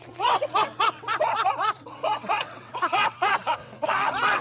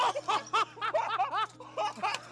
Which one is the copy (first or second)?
first